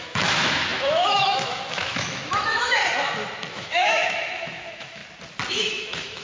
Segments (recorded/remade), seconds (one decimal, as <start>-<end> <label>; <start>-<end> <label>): 0.0-2.8 remade; 2.8-3.5 recorded; 3.5-5.0 remade; 5.0-5.5 recorded; 5.5-6.2 remade